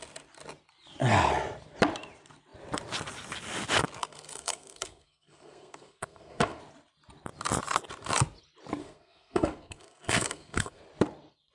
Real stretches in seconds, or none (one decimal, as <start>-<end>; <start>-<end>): 0.0-4.0; 6.6-8.8; 10.8-11.5